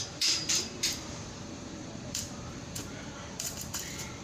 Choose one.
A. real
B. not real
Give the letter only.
B